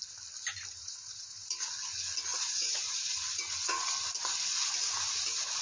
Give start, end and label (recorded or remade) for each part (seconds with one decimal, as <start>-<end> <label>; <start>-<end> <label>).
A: 0.0-0.8 recorded; 0.8-1.5 remade; 1.5-2.3 recorded; 2.3-3.9 remade; 3.9-5.6 recorded

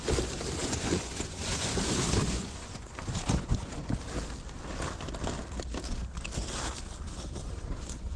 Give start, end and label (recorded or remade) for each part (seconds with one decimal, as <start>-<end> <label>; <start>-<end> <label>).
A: 0.0-0.6 recorded; 0.6-1.7 remade; 1.7-2.2 recorded; 2.2-3.9 remade; 3.9-7.4 recorded; 7.4-8.2 remade